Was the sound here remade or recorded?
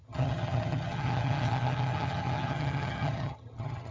remade